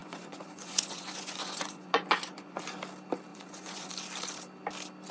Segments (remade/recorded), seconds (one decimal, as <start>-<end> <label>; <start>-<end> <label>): 0.0-2.6 remade; 2.6-3.3 recorded; 3.3-3.9 remade; 3.9-5.1 recorded